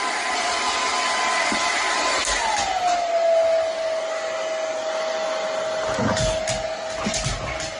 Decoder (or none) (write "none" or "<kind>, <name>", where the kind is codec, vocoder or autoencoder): none